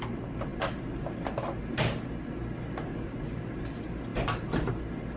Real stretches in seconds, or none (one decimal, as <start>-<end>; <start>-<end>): 0.0-5.2